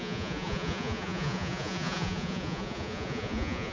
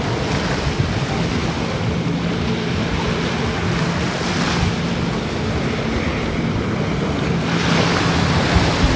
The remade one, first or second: first